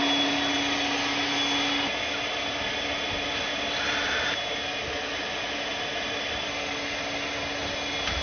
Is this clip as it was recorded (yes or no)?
yes